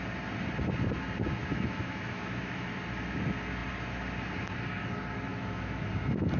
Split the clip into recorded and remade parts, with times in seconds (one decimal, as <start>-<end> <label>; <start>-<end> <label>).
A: 0.0-1.4 recorded; 1.4-2.7 remade; 2.7-5.3 recorded; 5.3-5.9 remade; 5.9-6.4 recorded